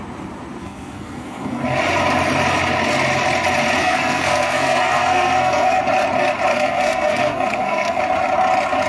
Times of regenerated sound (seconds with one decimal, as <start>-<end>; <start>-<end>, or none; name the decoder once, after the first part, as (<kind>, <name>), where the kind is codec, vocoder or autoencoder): 0.6-1.6 (codec, SNAC); 3.8-5.8; 6.5-8.0